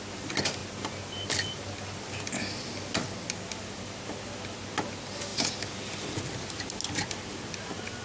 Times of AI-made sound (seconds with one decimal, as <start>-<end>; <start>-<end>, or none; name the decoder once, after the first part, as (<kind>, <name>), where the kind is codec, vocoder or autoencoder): none